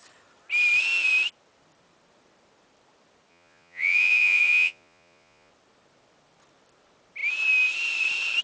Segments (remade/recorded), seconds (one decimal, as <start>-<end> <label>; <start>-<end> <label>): 0.0-3.3 recorded; 3.3-5.5 remade; 5.5-8.4 recorded